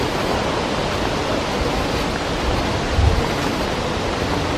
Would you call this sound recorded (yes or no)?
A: yes